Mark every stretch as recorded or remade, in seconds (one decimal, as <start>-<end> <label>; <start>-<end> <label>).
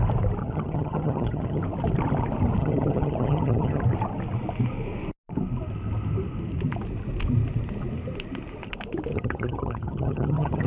0.0-0.4 recorded; 0.4-1.6 remade; 1.6-2.6 recorded; 2.6-3.8 remade; 3.8-9.1 recorded; 9.1-10.7 remade